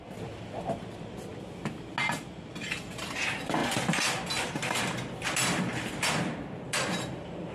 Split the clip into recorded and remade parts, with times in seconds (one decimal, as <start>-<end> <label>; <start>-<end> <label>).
0.0-1.3 remade; 1.3-2.2 recorded; 2.2-3.6 remade; 3.6-4.8 recorded; 4.8-7.5 remade